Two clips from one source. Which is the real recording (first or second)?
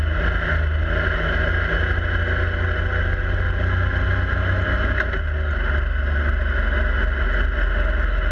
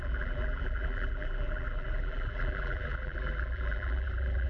first